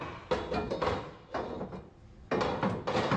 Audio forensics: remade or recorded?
recorded